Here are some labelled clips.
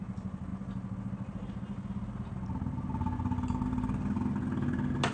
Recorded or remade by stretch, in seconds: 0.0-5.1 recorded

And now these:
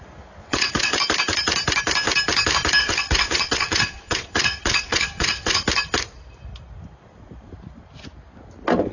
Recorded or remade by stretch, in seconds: 0.0-0.4 recorded; 0.4-1.0 remade; 1.0-2.8 recorded; 2.8-5.6 remade; 5.6-8.9 recorded

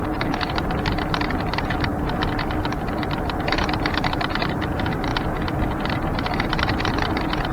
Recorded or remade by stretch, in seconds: 0.0-1.9 remade; 1.9-3.5 recorded; 3.5-5.1 remade; 5.1-6.3 recorded; 6.3-7.5 remade

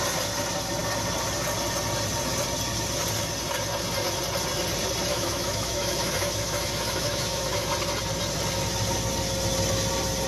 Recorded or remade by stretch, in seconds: 0.0-5.1 recorded; 5.1-7.7 remade; 7.7-10.3 recorded